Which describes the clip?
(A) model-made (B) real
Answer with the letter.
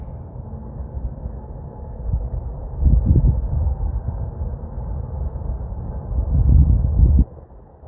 B